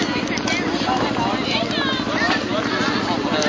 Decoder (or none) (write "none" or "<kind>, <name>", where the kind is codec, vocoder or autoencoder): none